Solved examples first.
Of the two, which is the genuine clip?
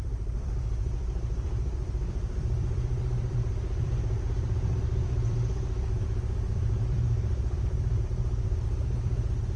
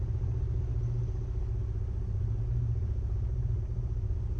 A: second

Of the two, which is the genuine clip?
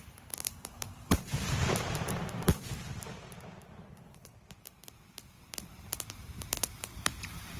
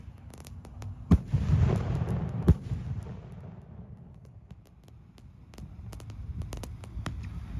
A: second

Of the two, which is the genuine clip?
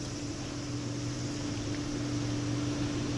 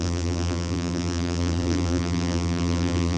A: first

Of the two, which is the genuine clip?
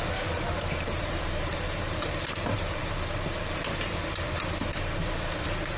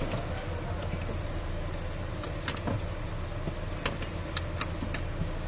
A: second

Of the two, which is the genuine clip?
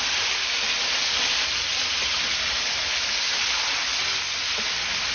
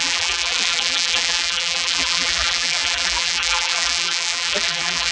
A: first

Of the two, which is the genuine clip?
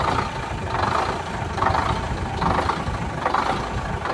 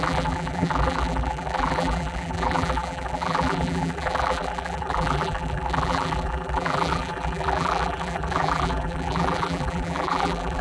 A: first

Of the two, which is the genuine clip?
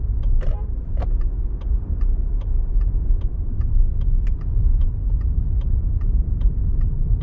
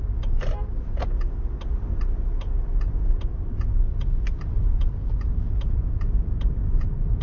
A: second